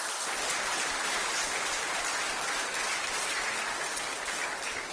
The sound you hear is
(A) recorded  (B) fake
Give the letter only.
A